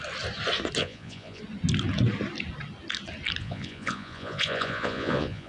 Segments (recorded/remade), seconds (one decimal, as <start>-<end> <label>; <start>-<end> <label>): 0.0-0.8 recorded; 0.8-1.4 remade; 1.4-3.4 recorded; 3.4-5.5 remade